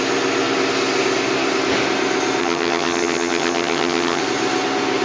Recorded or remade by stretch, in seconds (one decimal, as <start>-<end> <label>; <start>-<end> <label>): 0.0-2.4 recorded; 2.4-4.2 remade; 4.2-5.0 recorded